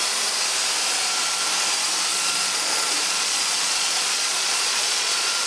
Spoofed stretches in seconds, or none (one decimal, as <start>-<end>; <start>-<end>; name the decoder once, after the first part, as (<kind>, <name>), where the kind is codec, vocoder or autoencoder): 2.1-5.5 (vocoder, Vocos)